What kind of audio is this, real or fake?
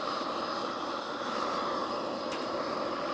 real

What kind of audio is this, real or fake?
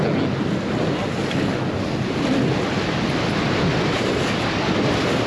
real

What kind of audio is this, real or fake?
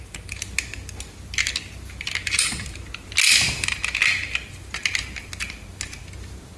real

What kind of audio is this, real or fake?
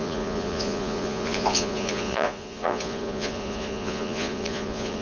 fake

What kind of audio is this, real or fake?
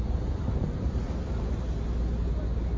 real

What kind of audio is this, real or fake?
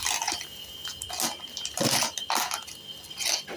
real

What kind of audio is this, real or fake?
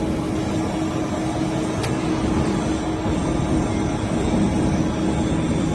real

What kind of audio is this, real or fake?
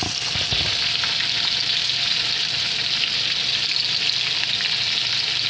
real